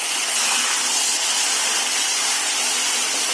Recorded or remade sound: recorded